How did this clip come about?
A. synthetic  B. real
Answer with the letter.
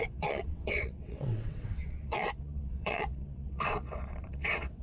A